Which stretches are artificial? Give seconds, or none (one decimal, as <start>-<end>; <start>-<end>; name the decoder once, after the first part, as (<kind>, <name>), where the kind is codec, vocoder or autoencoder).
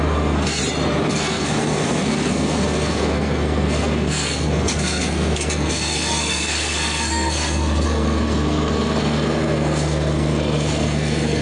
0.0-0.6 (codec, SNAC); 1.1-11.4